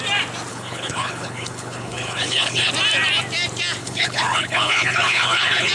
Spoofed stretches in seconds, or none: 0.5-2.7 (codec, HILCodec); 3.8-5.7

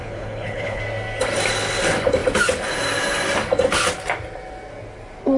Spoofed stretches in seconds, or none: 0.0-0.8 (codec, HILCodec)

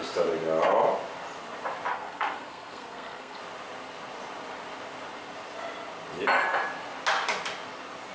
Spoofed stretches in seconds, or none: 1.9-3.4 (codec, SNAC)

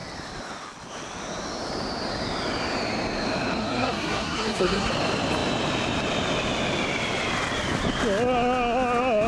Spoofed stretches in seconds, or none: 3.6-4.9 (codec, SNAC)

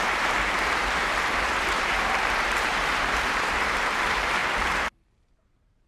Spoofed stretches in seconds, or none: 0.0-4.4 (vocoder, BigVGAN v2); 5.0-5.9

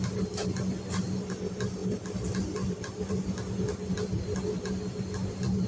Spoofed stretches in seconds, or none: none

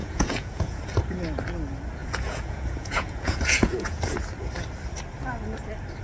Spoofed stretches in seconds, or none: 0.0-0.8 (vocoder, Vocos); 2.0-4.0